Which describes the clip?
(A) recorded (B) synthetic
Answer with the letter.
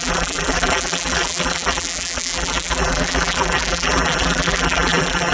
B